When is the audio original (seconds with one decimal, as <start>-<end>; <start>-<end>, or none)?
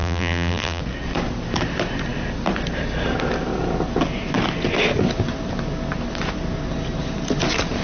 0.8-7.8